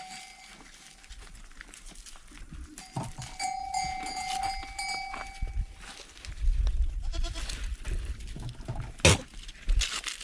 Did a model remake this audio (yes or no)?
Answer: no